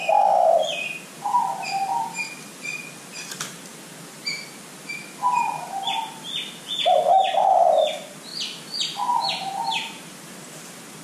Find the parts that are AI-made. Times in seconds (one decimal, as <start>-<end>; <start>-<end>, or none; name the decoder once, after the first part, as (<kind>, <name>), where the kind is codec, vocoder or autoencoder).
none